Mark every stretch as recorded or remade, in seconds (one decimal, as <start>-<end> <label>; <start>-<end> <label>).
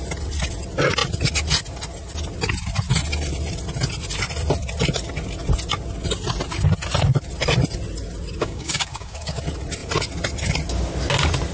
0.0-8.4 recorded; 8.4-9.4 remade; 9.4-11.5 recorded